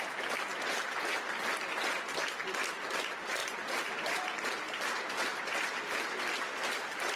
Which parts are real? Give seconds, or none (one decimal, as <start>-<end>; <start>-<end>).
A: 0.0-3.4